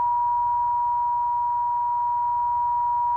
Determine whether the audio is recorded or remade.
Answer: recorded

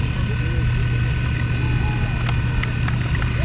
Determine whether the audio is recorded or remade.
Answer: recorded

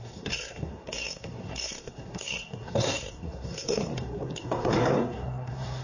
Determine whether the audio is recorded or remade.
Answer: remade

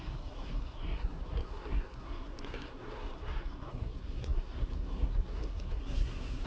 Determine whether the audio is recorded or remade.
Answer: remade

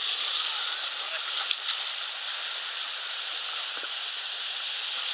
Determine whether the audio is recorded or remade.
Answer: recorded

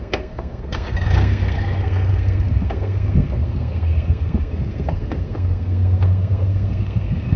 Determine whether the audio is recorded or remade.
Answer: remade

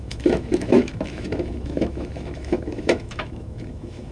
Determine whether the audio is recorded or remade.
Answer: remade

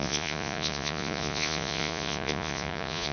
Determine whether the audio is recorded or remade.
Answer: remade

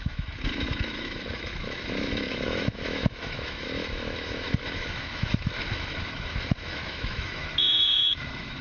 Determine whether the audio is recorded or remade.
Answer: remade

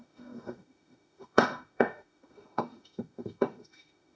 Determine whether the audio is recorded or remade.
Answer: remade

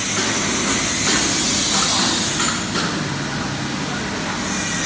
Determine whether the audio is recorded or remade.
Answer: recorded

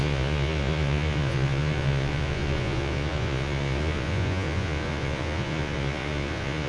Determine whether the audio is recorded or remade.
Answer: remade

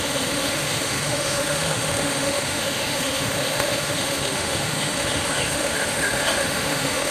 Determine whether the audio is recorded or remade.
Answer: remade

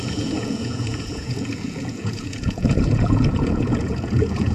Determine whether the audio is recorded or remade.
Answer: remade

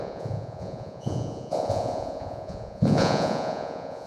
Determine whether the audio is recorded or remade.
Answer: remade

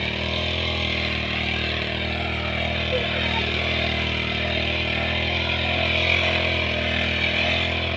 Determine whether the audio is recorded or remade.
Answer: recorded